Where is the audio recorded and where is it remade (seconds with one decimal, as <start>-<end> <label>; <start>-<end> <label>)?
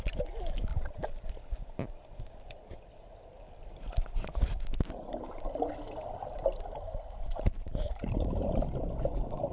0.0-0.7 recorded; 0.7-1.3 remade; 1.3-7.3 recorded; 7.3-8.5 remade; 8.5-9.5 recorded